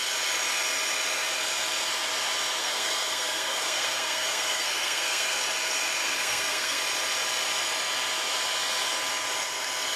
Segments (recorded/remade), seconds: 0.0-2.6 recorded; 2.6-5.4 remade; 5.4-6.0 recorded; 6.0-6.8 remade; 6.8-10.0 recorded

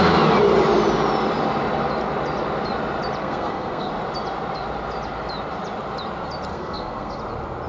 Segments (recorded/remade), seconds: 0.0-3.2 recorded; 3.2-3.9 remade; 3.9-6.5 recorded; 6.5-7.2 remade; 7.2-7.7 recorded

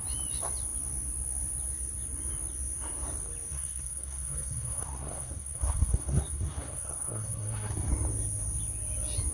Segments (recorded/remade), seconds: 0.0-3.5 recorded; 3.5-7.9 remade; 7.9-9.3 recorded

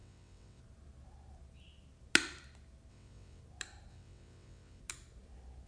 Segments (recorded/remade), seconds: 0.0-0.6 remade; 0.6-2.9 recorded; 2.9-3.4 remade; 3.4-3.9 recorded; 3.9-4.8 remade; 4.8-5.7 recorded

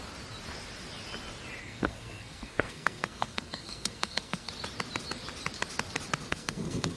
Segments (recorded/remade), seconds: 0.0-1.6 recorded; 1.6-4.5 remade; 4.5-6.3 recorded; 6.3-7.0 remade